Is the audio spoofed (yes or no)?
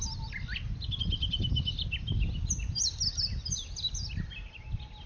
no